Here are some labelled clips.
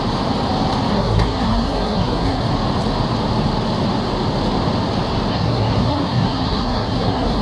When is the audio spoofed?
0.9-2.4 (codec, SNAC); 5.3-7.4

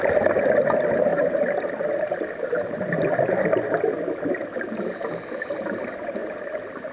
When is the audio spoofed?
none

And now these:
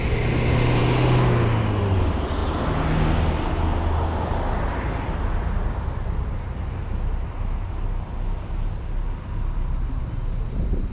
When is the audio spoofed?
none

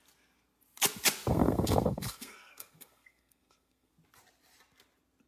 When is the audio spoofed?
1.3-3.9 (codec, SNAC)

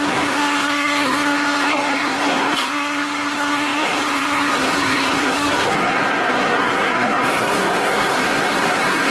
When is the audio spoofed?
0.0-9.1 (codec, SNAC)